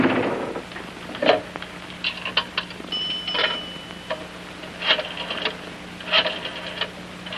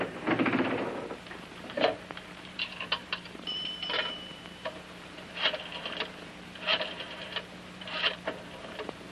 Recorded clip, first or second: first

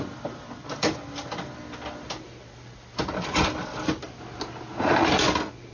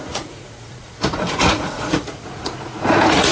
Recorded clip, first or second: first